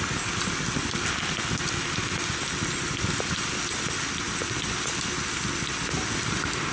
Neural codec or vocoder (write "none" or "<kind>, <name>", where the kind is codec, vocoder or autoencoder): none